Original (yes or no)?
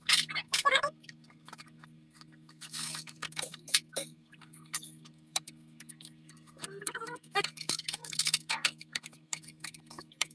no